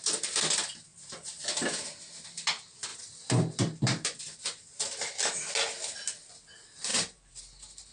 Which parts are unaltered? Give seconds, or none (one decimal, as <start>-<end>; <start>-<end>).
0.0-2.9; 4.2-6.9; 7.4-7.9